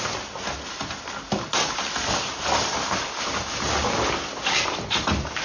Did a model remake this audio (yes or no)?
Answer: yes